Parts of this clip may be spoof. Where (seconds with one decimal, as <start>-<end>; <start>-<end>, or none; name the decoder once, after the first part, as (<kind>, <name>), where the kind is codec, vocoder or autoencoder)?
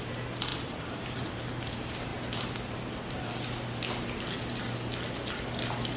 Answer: 0.5-1.3 (vocoder, BigVGAN v2)